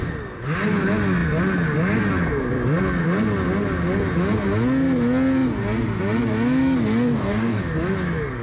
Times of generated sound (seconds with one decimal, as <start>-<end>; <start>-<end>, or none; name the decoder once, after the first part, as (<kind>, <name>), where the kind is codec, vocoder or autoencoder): 7.1-7.6 (codec, DAC)